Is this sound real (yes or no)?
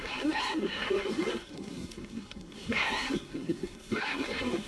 no